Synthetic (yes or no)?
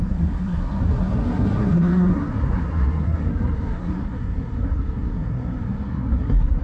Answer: yes